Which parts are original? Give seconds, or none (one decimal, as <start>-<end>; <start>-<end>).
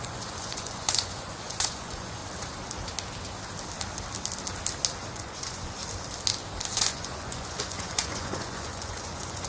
2.2-5.1; 5.8-6.7